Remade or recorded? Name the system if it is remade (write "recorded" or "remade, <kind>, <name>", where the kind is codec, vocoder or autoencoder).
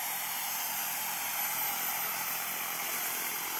recorded